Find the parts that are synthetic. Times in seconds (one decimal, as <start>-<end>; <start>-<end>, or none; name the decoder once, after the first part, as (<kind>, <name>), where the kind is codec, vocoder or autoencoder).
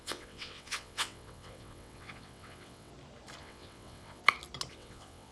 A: 0.0-2.9 (vocoder, WaveNeXt); 3.4-4.2; 4.7-5.3